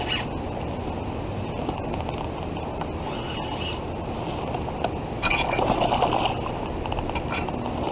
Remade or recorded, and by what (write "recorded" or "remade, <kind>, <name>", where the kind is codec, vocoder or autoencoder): recorded